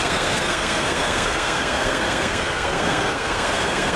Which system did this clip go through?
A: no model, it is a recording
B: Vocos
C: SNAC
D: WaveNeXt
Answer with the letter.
C